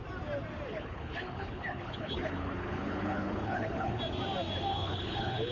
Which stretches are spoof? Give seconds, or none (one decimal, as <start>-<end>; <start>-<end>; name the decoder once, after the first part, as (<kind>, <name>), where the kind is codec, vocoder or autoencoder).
0.7-4.0 (codec, HILCodec); 4.7-5.5